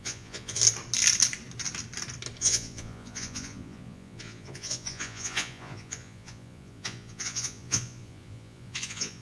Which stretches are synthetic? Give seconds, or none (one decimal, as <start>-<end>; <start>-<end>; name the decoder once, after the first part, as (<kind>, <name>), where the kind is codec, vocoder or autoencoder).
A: 0.0-0.6 (vocoder, Vocos); 2.4-9.2